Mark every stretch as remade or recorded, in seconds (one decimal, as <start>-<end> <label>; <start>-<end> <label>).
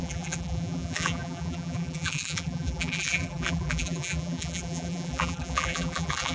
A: 0.0-6.3 remade